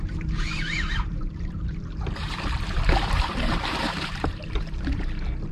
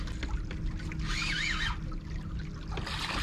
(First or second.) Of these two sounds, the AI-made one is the first